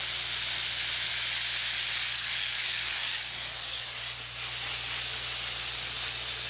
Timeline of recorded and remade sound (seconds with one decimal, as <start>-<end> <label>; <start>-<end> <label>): 0.0-2.1 recorded; 2.1-4.0 remade; 4.0-6.5 recorded